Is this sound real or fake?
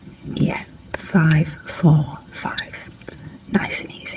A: fake